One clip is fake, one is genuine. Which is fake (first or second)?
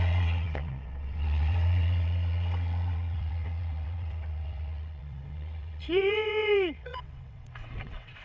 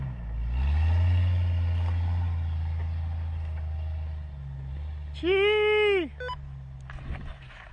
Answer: first